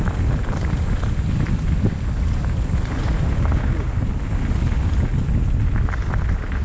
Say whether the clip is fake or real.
real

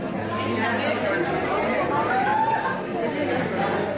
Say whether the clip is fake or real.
real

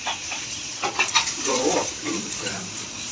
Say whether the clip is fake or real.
fake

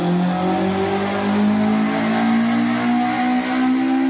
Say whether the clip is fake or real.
real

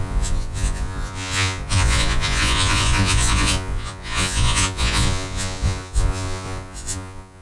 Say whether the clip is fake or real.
fake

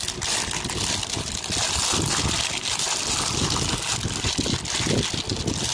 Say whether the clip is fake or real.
real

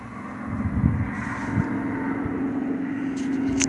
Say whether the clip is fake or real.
real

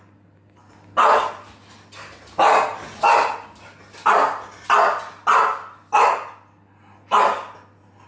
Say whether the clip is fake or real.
real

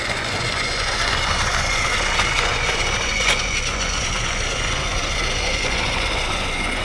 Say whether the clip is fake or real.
fake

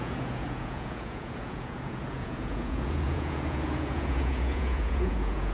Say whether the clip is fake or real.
fake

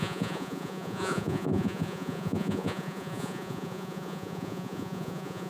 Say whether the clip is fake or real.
fake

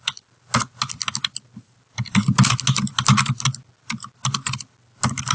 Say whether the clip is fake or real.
real